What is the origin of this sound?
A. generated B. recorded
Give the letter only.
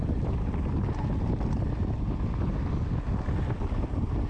B